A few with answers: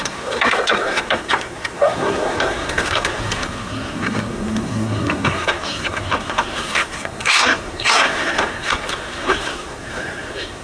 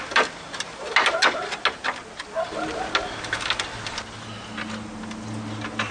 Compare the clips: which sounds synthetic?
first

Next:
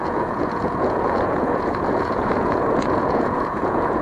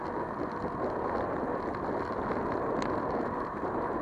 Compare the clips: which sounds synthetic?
first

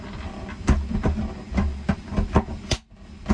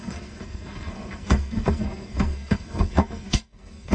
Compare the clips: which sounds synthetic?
second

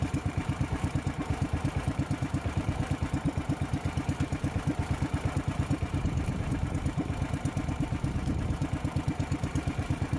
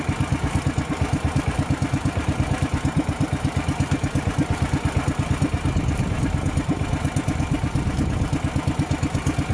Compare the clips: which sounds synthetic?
first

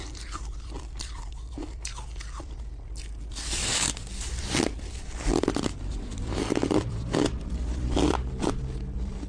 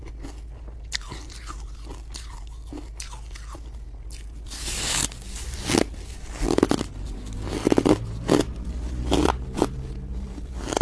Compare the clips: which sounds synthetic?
first